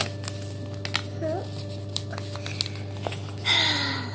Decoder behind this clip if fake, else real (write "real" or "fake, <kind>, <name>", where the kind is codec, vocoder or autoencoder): real